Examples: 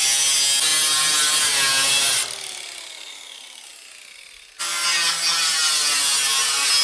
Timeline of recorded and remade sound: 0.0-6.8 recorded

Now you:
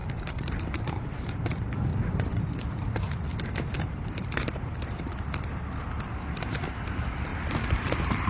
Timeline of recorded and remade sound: 0.0-1.5 remade; 1.5-1.9 recorded; 1.9-2.5 remade; 2.5-3.3 recorded; 3.3-4.7 remade; 4.7-7.3 recorded; 7.3-8.3 remade

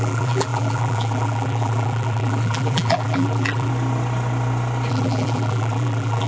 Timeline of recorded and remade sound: 0.0-3.7 remade; 3.7-4.9 recorded; 4.9-6.3 remade

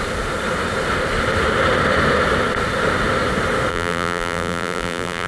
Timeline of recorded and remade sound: 0.0-3.7 recorded; 3.7-5.3 remade